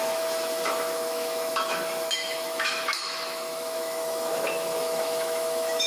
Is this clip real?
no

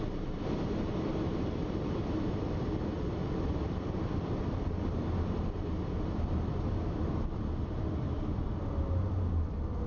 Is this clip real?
yes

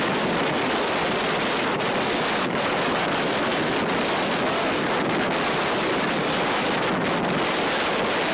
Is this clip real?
yes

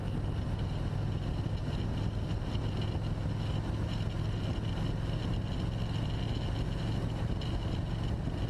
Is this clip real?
yes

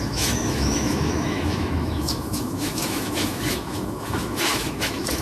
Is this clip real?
no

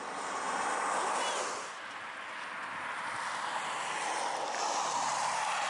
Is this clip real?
yes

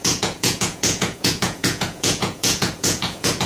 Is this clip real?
no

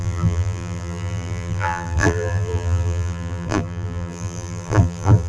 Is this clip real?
no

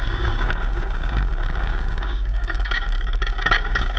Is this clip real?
no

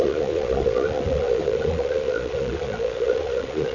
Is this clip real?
no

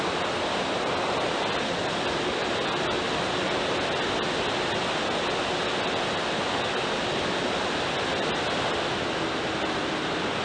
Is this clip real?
yes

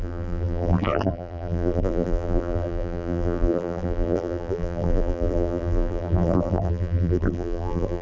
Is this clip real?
no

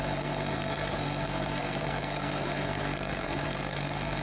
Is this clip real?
no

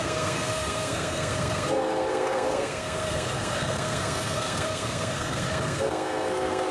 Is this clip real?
no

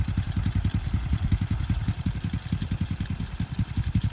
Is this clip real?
yes